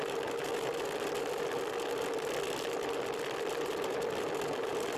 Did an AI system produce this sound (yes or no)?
no